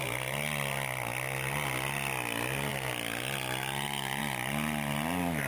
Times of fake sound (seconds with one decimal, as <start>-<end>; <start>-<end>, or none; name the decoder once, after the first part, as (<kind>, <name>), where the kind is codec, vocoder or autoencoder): none